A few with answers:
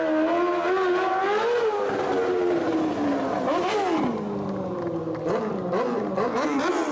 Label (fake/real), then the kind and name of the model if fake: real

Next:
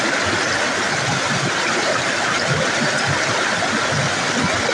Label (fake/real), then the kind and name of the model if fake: real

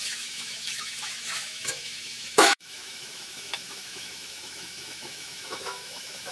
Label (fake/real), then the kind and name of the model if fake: fake, autoencoder, DAC-VAE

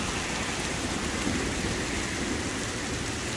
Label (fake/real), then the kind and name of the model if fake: real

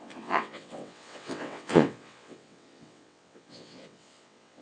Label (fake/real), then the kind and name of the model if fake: fake, vocoder, WaveNeXt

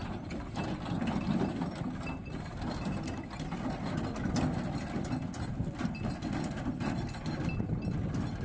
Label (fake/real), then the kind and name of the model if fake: real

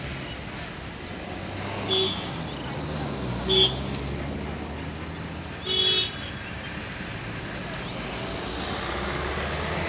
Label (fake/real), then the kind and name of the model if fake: real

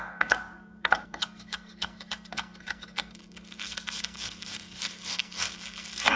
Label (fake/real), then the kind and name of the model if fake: fake, codec, SNAC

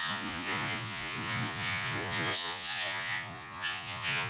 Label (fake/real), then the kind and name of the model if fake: fake, vocoder, Vocos